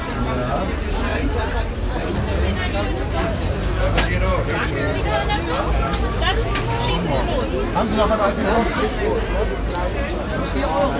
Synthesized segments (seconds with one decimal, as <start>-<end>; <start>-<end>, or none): none